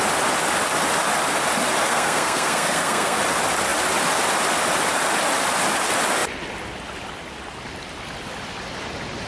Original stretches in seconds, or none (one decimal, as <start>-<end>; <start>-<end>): 0.0-1.8; 3.2-9.3

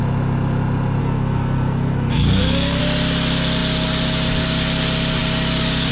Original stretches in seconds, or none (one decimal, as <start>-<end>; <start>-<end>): 0.0-1.0; 2.8-5.9

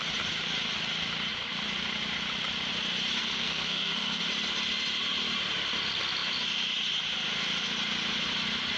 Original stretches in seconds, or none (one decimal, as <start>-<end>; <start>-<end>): 0.0-3.2; 4.2-8.8

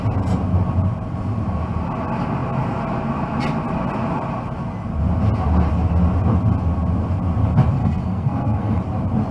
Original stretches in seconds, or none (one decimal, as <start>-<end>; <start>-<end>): 0.0-7.8; 8.8-9.3

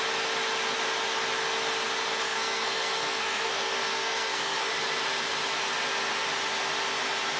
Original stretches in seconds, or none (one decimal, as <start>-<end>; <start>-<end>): 0.0-2.2; 4.7-7.4

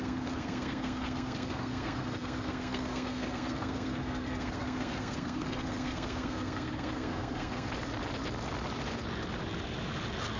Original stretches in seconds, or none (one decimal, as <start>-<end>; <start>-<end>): 7.7-10.4

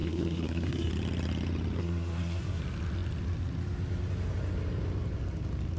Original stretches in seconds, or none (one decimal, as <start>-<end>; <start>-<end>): 0.9-1.8; 2.6-5.8

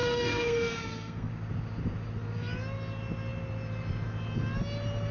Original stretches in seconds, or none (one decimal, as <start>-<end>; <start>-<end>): 1.3-5.1